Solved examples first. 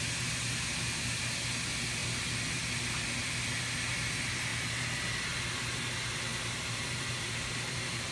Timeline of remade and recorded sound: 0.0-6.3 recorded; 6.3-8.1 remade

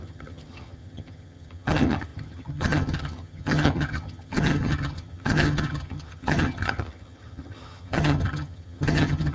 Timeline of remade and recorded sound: 0.0-9.3 remade

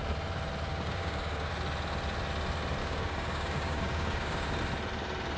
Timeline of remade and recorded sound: 0.0-0.7 recorded; 0.7-1.5 remade; 1.5-2.8 recorded; 2.8-4.6 remade; 4.6-5.4 recorded